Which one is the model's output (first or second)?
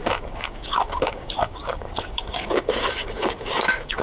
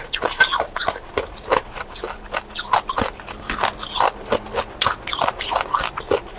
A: first